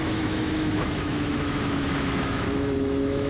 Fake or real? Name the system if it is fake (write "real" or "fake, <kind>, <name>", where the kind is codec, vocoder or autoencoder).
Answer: fake, autoencoder, DAC-VAE